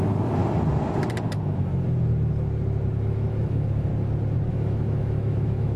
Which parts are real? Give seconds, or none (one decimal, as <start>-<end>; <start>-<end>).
0.4-1.2; 1.7-2.9; 3.9-4.5